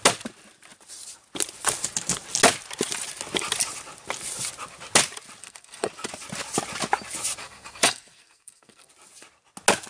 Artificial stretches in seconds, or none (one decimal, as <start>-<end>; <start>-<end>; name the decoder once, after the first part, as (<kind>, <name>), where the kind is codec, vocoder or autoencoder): 5.4-5.9 (codec, SNAC); 7.4-8.9